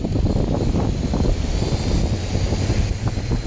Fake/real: real